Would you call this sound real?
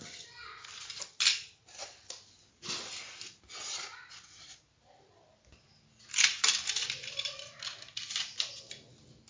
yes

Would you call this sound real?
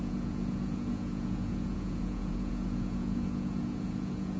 no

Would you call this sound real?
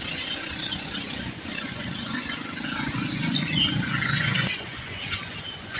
no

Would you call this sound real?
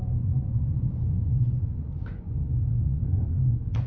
no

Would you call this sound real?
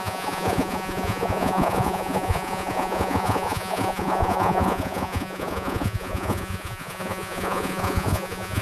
no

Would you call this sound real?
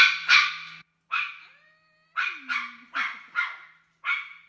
yes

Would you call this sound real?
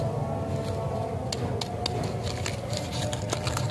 yes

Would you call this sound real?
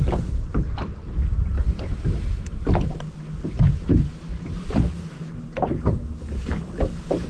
yes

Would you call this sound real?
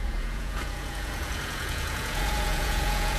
no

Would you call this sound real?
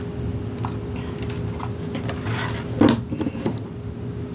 yes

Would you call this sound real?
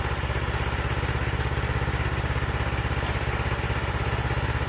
yes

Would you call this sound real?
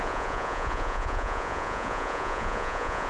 no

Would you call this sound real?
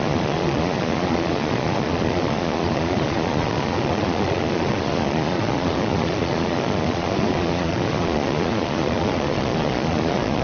no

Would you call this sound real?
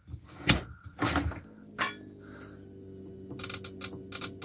yes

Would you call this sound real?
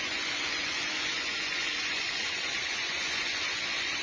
no